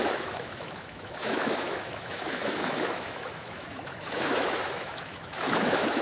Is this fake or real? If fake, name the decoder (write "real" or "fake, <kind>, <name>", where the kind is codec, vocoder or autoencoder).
fake, autoencoder, DAC-VAE